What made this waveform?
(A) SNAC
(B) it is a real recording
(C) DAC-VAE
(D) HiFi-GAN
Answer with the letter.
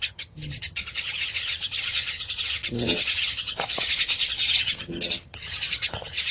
D